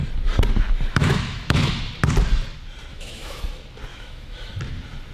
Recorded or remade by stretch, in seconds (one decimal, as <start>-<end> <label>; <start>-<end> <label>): 0.0-1.0 recorded; 1.0-1.8 remade; 1.8-2.9 recorded; 2.9-3.4 remade; 3.4-3.9 recorded; 3.9-4.5 remade; 4.5-5.1 recorded